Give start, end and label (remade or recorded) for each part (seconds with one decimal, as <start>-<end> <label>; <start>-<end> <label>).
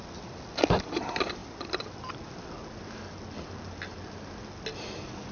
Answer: 0.0-5.3 recorded